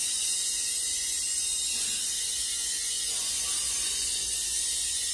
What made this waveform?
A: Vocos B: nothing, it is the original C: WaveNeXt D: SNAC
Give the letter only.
A